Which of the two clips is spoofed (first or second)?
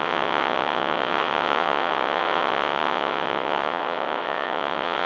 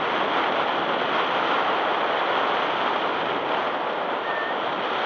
first